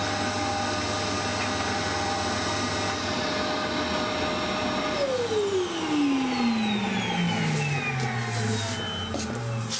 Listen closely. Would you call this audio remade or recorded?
recorded